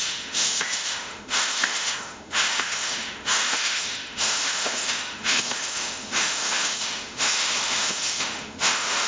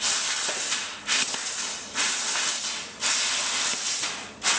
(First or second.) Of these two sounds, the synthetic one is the first